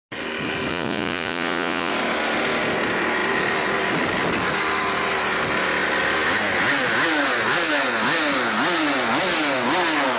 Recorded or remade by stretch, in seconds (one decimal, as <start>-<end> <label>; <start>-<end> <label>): 0.0-0.7 recorded; 0.7-1.9 remade; 1.9-10.2 recorded